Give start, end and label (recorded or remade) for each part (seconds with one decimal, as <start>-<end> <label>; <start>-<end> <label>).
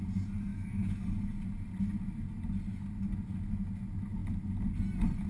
0.0-0.5 recorded; 0.5-1.0 remade; 1.0-5.3 recorded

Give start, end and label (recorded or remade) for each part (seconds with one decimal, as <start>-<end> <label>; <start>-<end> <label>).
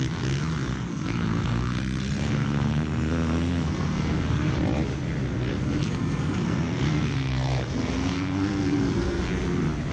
0.0-0.7 recorded; 0.7-4.5 remade; 4.5-5.5 recorded; 5.5-9.2 remade; 9.2-9.9 recorded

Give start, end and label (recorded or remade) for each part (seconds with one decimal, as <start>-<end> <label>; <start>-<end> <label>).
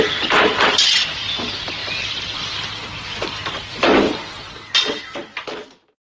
0.0-6.1 recorded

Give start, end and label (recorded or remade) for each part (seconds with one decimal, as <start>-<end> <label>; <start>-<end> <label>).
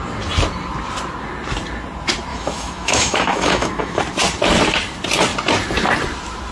0.0-2.3 recorded; 2.3-4.0 remade; 4.0-6.5 recorded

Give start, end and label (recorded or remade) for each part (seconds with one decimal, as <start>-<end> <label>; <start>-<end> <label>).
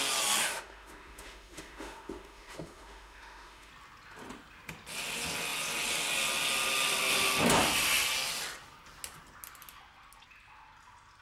0.0-0.4 recorded; 0.4-3.7 remade; 3.7-11.2 recorded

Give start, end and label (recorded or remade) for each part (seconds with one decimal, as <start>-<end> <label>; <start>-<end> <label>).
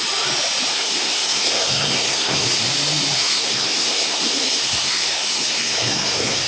0.0-0.7 recorded; 0.7-2.6 remade; 2.6-3.2 recorded; 3.2-6.5 remade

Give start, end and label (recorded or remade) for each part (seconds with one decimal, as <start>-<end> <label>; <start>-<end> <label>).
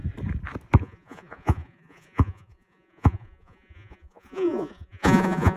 0.0-0.8 recorded; 0.8-5.6 remade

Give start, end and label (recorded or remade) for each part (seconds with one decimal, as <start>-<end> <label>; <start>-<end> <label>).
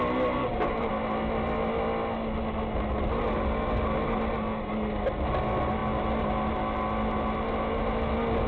0.0-0.4 recorded; 0.4-0.9 remade; 0.9-8.5 recorded